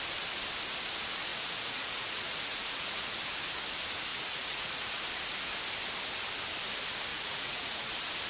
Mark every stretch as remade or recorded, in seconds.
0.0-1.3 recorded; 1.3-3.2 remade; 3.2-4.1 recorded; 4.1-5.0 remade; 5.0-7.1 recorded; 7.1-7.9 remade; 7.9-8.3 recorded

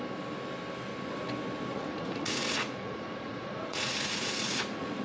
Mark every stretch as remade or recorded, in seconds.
0.0-1.7 recorded; 1.7-5.0 remade

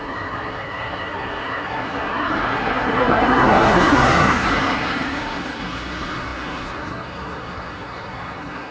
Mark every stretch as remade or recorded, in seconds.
0.0-8.7 remade

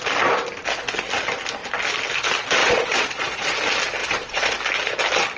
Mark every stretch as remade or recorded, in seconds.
0.0-2.6 recorded; 2.6-3.4 remade; 3.4-4.0 recorded; 4.0-4.5 remade; 4.5-5.4 recorded

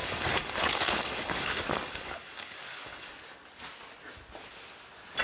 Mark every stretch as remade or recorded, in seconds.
0.0-3.1 remade; 3.1-5.2 recorded